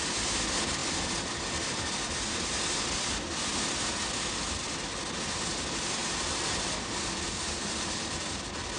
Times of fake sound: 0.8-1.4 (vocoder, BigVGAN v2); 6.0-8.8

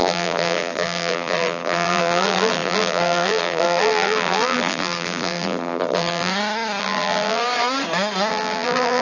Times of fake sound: 0.0-6.3 (vocoder, BigVGAN v2); 6.8-7.4; 8.3-9.0

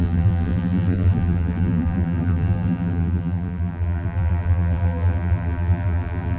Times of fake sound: 0.0-6.4 (vocoder, BigVGAN v2)